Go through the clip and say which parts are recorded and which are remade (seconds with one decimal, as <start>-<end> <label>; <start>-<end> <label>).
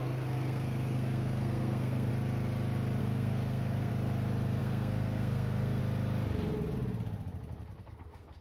0.0-2.1 remade; 2.1-3.0 recorded; 3.0-3.9 remade; 3.9-4.6 recorded; 4.6-5.8 remade; 5.8-7.8 recorded; 7.8-8.4 remade